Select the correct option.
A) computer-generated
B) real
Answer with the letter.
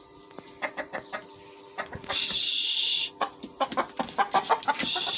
A